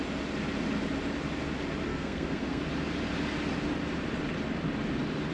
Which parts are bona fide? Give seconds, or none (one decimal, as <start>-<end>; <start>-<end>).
0.0-1.9; 2.6-5.3